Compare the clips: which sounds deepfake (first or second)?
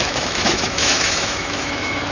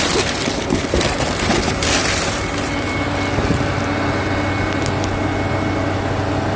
first